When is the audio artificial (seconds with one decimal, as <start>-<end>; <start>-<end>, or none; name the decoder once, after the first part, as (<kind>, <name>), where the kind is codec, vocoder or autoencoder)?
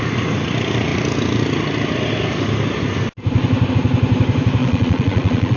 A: 4.6-5.6 (vocoder, Vocos)